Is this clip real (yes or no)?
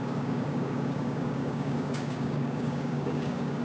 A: no